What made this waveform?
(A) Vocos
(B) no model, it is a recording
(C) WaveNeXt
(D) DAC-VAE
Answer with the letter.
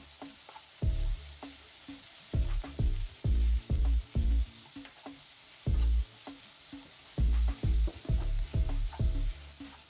B